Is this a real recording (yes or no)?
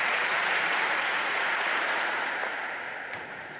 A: no